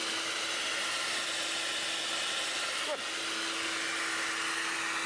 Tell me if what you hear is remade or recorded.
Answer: recorded